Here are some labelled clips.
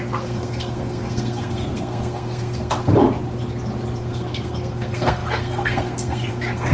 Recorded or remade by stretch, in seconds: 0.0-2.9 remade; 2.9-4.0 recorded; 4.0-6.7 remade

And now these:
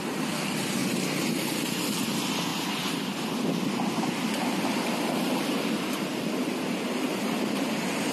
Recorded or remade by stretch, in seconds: 0.0-8.1 recorded

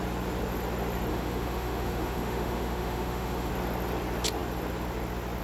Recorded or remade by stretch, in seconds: 0.0-1.1 recorded; 1.1-3.5 remade; 3.5-5.4 recorded

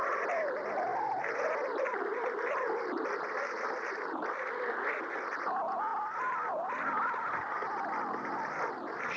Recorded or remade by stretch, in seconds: 0.0-9.2 recorded

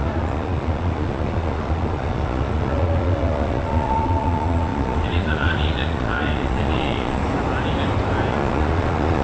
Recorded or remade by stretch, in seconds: 0.0-7.2 remade; 7.2-8.3 recorded; 8.3-9.2 remade